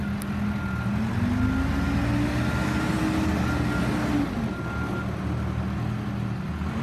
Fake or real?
real